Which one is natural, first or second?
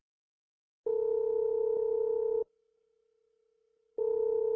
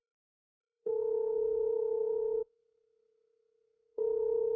first